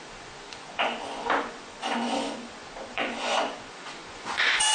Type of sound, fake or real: fake